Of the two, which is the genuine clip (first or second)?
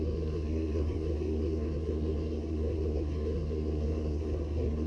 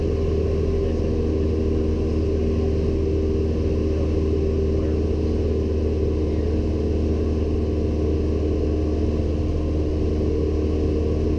second